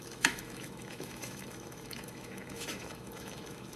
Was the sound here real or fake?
fake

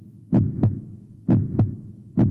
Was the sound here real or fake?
fake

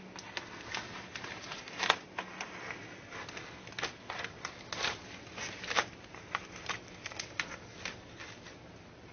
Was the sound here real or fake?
real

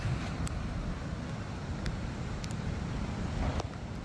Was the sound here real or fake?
real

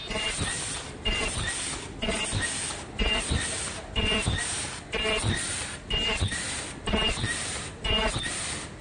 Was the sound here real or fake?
real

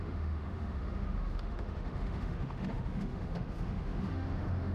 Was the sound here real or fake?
fake